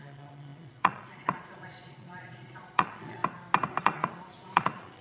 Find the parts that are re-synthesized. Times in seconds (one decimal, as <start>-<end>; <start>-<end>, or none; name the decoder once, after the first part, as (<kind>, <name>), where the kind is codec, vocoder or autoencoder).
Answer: 0.0-3.2 (vocoder, Vocos); 3.8-5.0